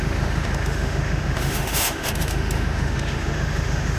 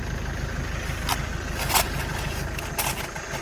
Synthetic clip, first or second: first